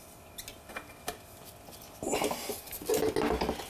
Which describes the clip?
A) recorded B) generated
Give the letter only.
A